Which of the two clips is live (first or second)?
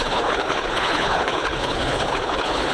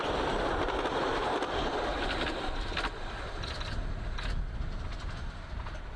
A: second